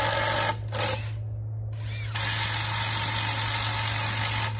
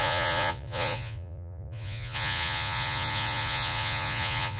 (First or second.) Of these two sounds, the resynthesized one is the second